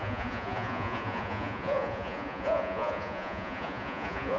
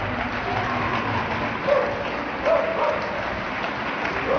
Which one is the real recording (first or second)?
second